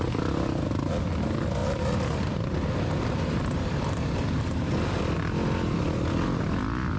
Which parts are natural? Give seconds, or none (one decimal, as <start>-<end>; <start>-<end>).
0.0-7.0

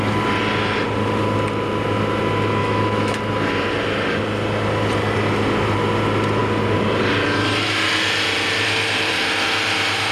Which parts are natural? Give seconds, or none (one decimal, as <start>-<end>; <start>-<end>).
0.0-2.6; 3.2-10.1

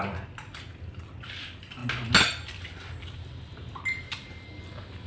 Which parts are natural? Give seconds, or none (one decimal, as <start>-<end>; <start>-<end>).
0.0-5.1

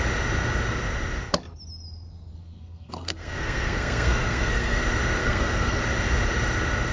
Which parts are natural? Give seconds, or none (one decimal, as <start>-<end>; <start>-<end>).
0.0-2.4; 4.8-5.2; 5.8-6.9

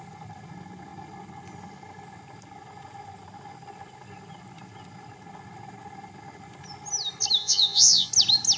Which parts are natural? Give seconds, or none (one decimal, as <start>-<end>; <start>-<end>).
0.0-7.4; 8.1-8.6